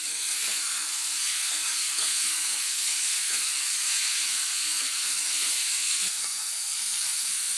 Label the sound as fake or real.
fake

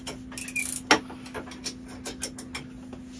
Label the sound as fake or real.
real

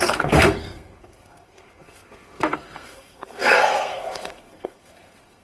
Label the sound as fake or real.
fake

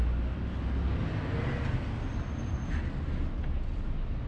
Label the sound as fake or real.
real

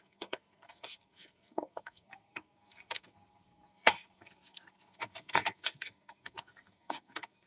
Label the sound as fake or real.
fake